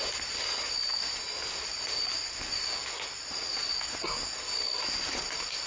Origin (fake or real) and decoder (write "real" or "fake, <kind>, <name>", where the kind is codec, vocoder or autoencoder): real